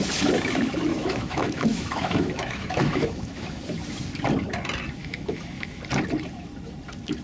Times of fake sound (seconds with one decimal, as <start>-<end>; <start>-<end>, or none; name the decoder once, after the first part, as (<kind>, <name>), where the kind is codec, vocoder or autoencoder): 0.9-3.6 (autoencoder, DAC-VAE); 5.0-5.8

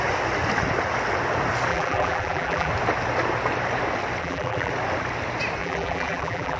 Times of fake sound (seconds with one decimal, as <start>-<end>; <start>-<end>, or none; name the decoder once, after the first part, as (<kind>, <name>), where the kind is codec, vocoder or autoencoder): 1.7-2.7 (vocoder, BigVGAN v2); 4.2-4.7; 5.6-6.6

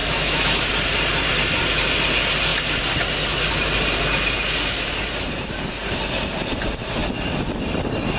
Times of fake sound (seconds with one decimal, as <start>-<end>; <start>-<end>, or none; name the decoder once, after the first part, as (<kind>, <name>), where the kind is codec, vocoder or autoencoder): 0.0-0.7 (autoencoder, DAC-VAE)

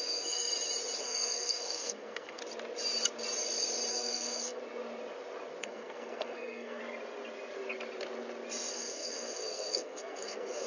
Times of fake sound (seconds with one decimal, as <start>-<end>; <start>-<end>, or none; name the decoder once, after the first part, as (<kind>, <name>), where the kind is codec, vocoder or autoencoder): 0.0-0.5 (codec, SNAC); 1.0-2.4; 3.9-4.6; 5.6-6.8; 8.7-10.7

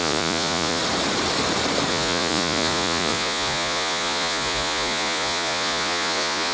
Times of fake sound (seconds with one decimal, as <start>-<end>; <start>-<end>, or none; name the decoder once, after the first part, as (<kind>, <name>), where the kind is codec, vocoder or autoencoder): 0.0-0.8 (vocoder, Vocos); 1.9-6.5